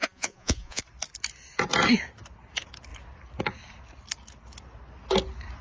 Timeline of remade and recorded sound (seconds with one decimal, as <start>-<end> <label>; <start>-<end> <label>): 0.0-0.8 remade; 0.8-5.6 recorded